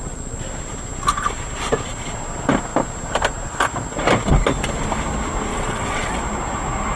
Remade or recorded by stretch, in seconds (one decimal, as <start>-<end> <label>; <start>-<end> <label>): 0.0-5.5 recorded; 5.5-6.2 remade; 6.2-7.0 recorded